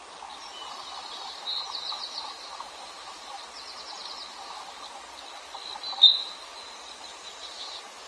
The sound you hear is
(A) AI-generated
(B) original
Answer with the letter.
B